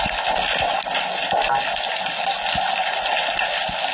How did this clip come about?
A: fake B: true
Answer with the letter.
B